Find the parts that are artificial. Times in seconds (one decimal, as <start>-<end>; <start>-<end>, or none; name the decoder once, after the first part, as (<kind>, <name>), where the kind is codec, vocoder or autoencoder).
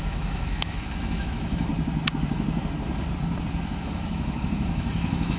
0.0-1.7 (autoencoder, DAC-VAE); 3.8-5.4